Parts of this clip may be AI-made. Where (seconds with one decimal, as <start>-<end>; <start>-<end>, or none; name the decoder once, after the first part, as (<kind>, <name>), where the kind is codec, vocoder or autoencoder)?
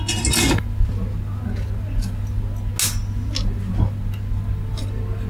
none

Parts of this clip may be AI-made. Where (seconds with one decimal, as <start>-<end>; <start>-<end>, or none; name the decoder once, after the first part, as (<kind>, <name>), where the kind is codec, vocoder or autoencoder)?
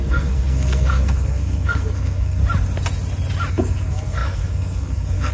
0.0-2.4 (codec, SNAC); 3.5-5.3